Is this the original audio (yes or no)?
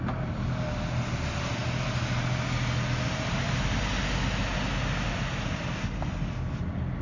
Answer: yes